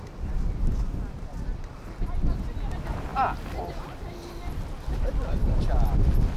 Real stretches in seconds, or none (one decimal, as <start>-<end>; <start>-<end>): 0.0-6.4